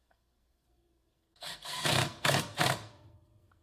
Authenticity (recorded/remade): remade